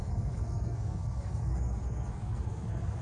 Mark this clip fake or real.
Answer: fake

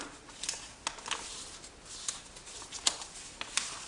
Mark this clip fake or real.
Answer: real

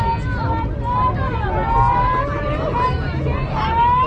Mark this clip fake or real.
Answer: real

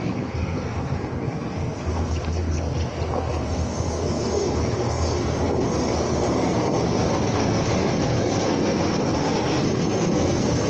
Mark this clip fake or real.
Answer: fake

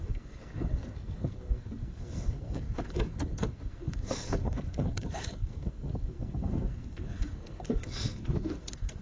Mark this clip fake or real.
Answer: fake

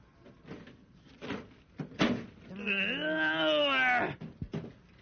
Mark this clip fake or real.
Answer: real